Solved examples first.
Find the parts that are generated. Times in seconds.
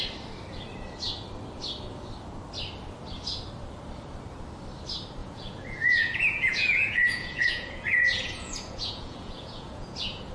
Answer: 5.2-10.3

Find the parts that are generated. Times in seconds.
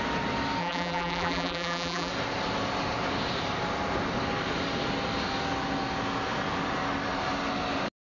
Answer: 0.6-2.1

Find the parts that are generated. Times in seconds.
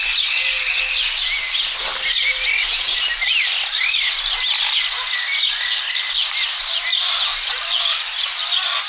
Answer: none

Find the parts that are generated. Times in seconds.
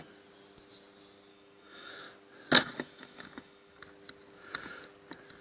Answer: 1.3-1.9; 2.6-3.8